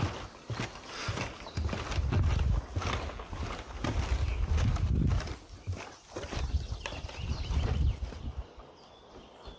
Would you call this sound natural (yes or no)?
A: yes